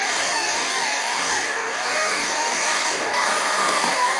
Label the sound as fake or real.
fake